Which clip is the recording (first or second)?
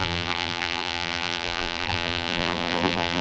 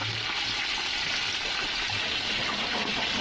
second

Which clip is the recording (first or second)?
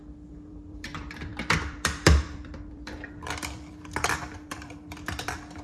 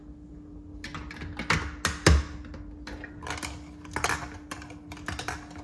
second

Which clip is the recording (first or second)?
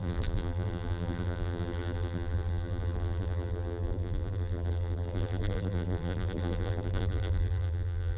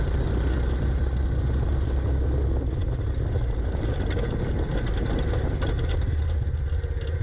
second